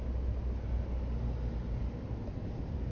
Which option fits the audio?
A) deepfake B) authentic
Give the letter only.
B